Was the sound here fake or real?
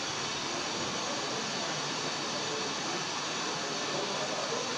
real